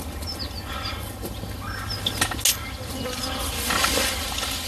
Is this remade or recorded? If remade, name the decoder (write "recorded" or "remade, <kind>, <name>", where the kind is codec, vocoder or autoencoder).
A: recorded